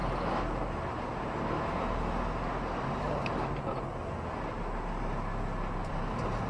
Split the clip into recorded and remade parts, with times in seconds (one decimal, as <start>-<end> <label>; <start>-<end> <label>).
0.0-5.8 recorded; 5.8-6.5 remade